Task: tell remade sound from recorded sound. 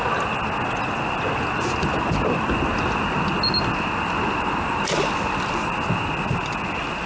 recorded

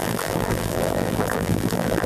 remade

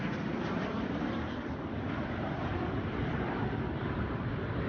remade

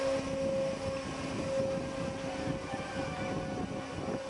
recorded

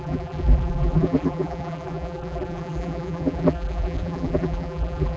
remade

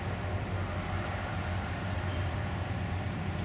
recorded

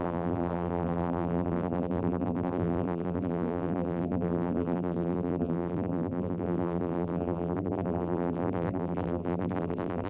remade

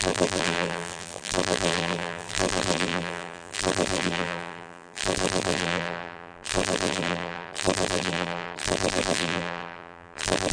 remade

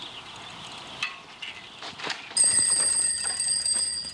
recorded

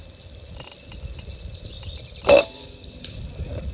remade